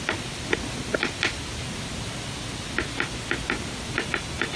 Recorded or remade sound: recorded